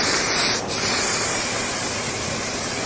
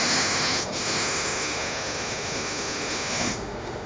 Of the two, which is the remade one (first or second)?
second